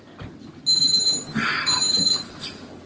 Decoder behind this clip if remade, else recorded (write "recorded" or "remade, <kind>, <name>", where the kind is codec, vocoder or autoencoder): recorded